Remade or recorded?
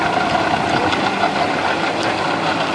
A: recorded